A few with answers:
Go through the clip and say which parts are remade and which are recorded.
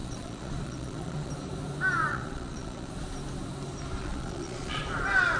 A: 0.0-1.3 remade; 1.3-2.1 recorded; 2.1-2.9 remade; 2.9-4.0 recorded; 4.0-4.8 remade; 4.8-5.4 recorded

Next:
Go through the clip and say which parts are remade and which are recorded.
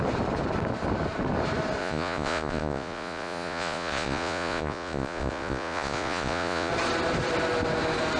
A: 0.0-1.8 recorded; 1.8-6.7 remade; 6.7-8.2 recorded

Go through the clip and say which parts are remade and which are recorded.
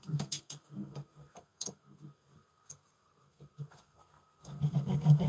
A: 0.0-5.3 remade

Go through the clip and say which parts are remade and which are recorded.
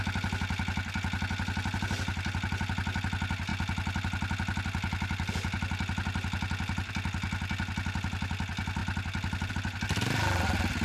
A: 0.0-10.8 recorded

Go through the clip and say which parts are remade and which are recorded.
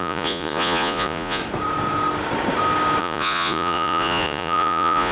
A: 0.0-1.4 remade; 1.4-3.0 recorded; 3.0-5.1 remade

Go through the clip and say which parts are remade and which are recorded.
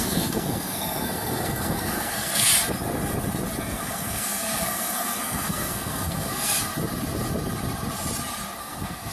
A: 0.0-2.5 remade; 2.5-3.6 recorded; 3.6-6.7 remade; 6.7-8.6 recorded; 8.6-9.1 remade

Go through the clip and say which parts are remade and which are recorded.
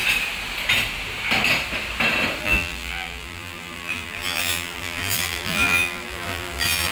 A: 0.0-2.4 recorded; 2.4-6.9 remade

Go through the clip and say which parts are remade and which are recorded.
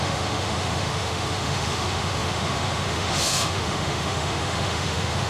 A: 0.0-5.3 remade